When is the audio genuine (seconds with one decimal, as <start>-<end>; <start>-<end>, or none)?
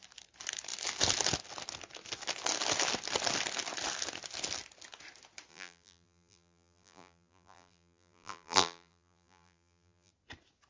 0.0-5.5; 10.1-10.7